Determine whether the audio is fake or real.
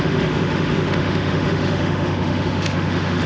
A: fake